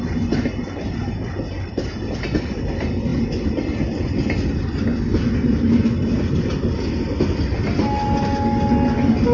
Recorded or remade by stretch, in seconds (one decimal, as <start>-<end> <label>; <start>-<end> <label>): 0.0-9.3 recorded